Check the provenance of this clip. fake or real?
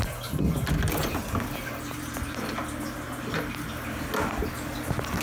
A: real